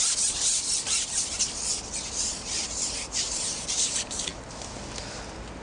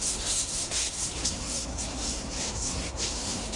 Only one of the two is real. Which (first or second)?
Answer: first